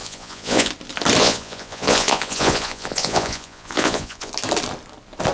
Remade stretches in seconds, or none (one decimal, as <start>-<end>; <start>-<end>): 0.0-0.7; 1.2-4.3

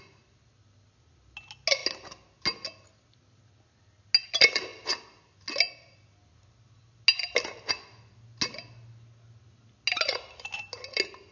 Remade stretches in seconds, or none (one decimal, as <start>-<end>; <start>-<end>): none

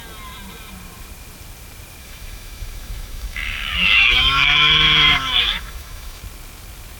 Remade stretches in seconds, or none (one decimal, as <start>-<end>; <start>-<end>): 2.0-6.2

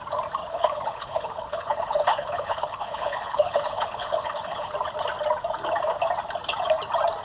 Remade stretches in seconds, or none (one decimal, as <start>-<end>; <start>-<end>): 0.4-4.7